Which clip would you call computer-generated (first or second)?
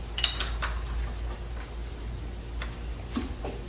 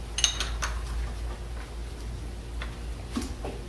first